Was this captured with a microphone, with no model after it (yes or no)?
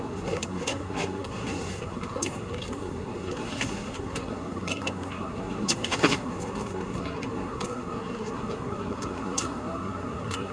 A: no